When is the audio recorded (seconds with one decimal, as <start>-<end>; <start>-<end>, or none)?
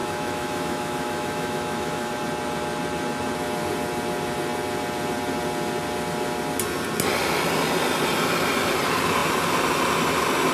2.1-10.5